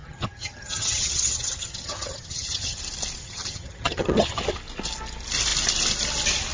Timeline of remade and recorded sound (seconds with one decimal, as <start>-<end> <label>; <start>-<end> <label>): 0.0-2.8 remade; 2.8-3.2 recorded; 3.2-4.4 remade; 4.4-6.5 recorded